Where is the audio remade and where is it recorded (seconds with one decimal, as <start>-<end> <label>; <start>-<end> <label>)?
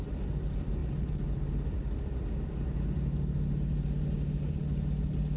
0.0-5.4 recorded